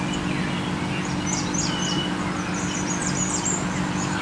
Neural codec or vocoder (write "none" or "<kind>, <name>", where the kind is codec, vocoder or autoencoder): none